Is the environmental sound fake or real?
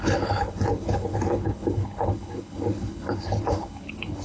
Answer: fake